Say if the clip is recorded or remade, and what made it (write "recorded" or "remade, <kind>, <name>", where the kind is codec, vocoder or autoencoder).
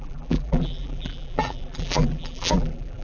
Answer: remade, vocoder, BigVGAN v2